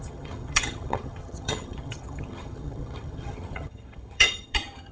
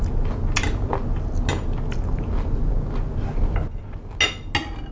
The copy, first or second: first